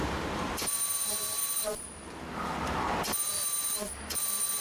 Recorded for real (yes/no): no